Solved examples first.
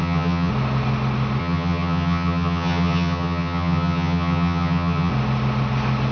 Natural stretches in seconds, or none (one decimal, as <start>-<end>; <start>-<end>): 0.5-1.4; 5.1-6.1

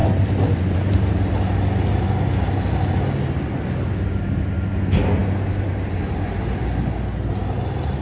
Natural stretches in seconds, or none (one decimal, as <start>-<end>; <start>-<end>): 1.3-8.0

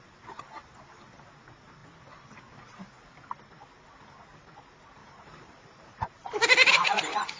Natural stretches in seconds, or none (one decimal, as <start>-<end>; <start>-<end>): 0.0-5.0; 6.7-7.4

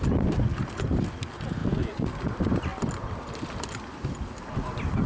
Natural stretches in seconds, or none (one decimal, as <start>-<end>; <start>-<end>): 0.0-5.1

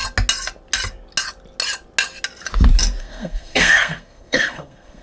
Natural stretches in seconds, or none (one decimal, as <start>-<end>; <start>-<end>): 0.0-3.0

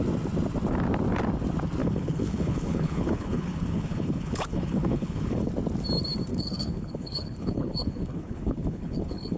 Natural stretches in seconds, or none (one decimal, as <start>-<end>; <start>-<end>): 0.0-1.8; 5.5-6.3